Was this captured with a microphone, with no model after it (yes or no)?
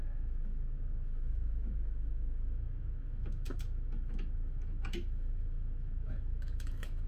no